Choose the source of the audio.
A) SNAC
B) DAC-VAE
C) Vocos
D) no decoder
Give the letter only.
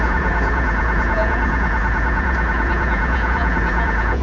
C